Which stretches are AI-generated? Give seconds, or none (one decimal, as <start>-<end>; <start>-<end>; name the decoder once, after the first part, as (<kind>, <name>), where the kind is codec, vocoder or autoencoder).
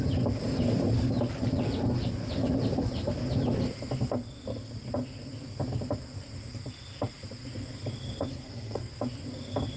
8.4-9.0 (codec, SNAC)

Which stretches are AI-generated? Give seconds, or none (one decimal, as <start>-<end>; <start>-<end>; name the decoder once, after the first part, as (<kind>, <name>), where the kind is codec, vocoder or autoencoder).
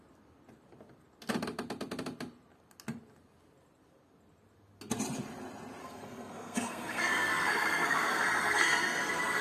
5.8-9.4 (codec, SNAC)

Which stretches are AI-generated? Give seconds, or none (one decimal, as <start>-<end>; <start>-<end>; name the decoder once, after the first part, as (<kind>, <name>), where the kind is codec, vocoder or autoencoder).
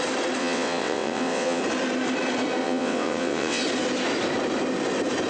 0.4-1.6 (vocoder, WaveNeXt); 2.6-3.6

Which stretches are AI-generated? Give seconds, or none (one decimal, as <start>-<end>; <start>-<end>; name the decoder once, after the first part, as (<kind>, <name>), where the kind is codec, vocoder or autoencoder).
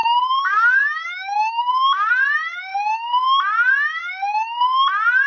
0.0-2.1 (autoencoder, DAC-VAE)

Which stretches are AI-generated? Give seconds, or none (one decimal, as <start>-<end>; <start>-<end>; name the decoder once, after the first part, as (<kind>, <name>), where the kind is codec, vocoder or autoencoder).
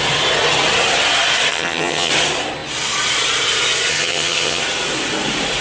1.5-2.1 (vocoder, HiFi-GAN); 3.9-4.6